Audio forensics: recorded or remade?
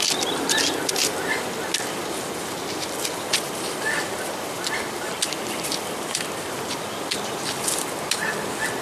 recorded